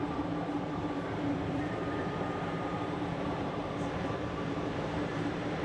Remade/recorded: remade